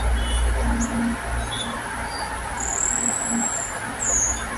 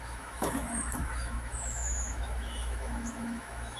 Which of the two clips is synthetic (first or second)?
second